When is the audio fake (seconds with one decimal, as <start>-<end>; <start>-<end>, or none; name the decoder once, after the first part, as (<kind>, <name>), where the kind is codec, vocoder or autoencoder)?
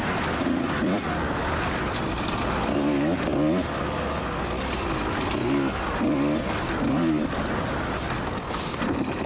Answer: 0.0-3.3 (vocoder, BigVGAN v2); 8.0-9.3